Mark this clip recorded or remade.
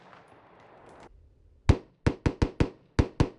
recorded